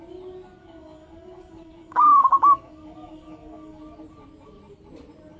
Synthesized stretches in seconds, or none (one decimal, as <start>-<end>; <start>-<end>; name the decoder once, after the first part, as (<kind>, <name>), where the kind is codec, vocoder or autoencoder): 0.6-3.8 (codec, DAC)